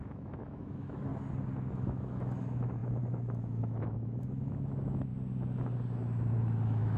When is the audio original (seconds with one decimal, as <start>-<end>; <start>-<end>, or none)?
1.1-1.7; 5.1-6.3